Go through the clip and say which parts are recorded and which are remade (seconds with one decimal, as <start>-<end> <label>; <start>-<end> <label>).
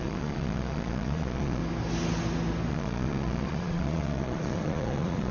0.0-1.6 remade; 1.6-2.7 recorded; 2.7-5.3 remade